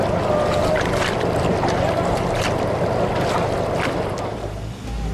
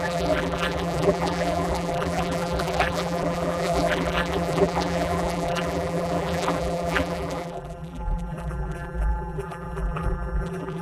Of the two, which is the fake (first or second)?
second